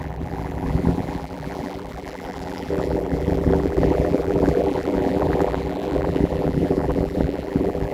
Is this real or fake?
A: fake